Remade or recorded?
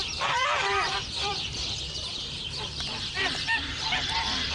remade